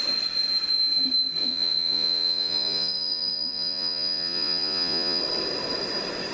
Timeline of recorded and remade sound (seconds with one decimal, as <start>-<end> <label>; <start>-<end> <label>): 0.0-1.4 recorded; 1.4-5.2 remade; 5.2-6.3 recorded